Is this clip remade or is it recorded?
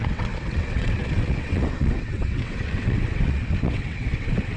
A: remade